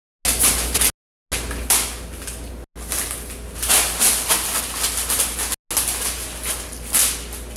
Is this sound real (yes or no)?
yes